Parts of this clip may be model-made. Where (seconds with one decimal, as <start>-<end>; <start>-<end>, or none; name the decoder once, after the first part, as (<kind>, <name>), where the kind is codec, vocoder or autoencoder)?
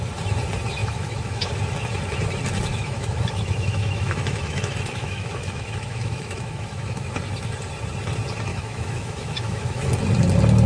0.8-1.5 (autoencoder, DAC-VAE); 2.7-7.2; 8.5-9.9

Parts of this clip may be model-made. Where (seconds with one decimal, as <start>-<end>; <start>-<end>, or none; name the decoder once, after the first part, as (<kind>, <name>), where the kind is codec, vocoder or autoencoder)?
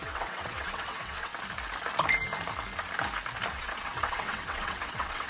0.0-1.3 (vocoder, WaveNeXt); 3.5-5.3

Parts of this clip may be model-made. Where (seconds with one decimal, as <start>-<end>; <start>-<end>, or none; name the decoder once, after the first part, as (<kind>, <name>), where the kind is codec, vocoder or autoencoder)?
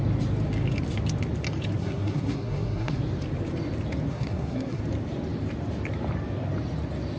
1.8-3.0 (codec, SNAC); 4.1-4.8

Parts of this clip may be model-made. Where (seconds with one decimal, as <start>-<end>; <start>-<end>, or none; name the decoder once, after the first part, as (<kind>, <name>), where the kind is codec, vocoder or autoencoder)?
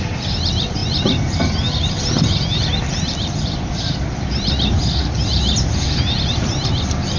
0.0-7.2 (vocoder, BigVGAN v2)